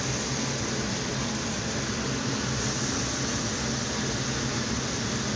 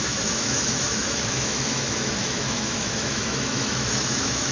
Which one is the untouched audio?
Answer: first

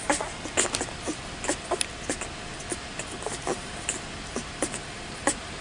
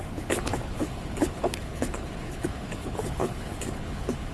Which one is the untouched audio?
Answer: first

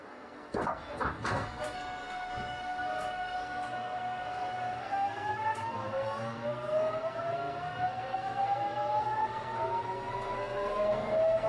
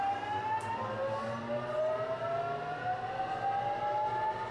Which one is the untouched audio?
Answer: second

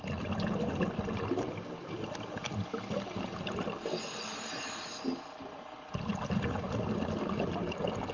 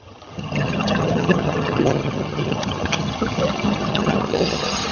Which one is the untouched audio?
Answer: first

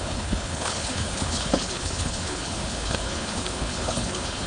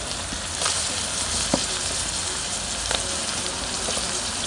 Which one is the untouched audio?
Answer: second